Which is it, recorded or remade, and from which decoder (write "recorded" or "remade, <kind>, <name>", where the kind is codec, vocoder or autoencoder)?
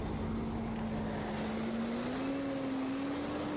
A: recorded